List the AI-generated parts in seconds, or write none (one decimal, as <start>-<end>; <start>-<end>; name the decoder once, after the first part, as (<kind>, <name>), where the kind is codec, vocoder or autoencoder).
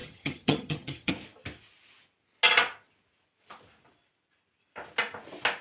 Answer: 0.0-1.1 (vocoder, HiFi-GAN)